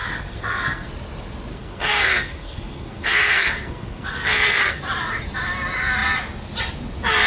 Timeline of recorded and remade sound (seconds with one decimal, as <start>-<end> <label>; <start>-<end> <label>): 0.0-0.9 remade; 0.9-1.5 recorded; 1.5-4.8 remade; 4.8-7.3 recorded